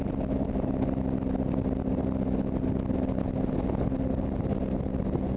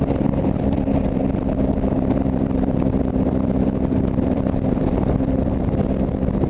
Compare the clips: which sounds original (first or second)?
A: first